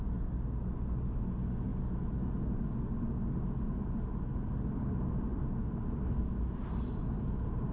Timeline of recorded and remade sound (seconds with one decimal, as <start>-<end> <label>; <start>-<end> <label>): 0.0-5.3 recorded; 5.3-7.7 remade

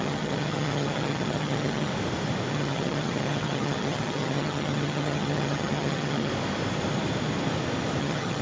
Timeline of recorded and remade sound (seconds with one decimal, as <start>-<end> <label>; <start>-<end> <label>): 0.0-1.9 remade; 1.9-2.5 recorded; 2.5-6.3 remade; 6.3-8.0 recorded; 8.0-8.4 remade

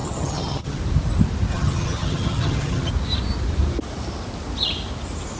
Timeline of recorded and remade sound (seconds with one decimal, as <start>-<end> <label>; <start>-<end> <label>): 0.0-0.8 remade; 0.8-1.5 recorded; 1.5-2.9 remade; 2.9-5.4 recorded

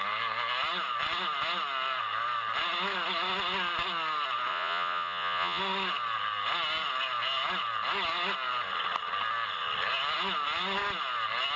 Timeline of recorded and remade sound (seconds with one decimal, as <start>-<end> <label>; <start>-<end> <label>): 0.0-4.5 recorded; 4.5-5.6 remade; 5.6-11.6 recorded

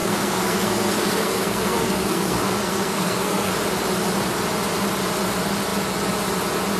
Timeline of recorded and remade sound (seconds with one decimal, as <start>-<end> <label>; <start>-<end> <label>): 0.0-3.5 remade; 3.5-6.8 recorded

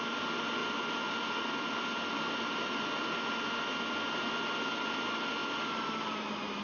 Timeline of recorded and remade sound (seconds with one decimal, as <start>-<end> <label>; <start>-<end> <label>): 0.0-6.6 recorded

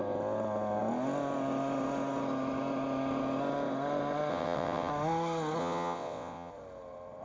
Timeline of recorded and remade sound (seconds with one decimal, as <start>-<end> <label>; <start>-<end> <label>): 0.0-4.3 recorded; 4.3-4.9 remade; 4.9-5.6 recorded; 5.6-6.5 remade; 6.5-7.2 recorded

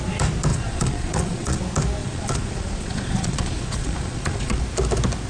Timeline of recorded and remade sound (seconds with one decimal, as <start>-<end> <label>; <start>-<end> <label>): 0.0-0.5 recorded; 0.5-1.6 remade; 1.6-2.0 recorded; 2.0-4.6 remade; 4.6-5.3 recorded